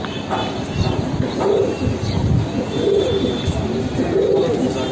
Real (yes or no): yes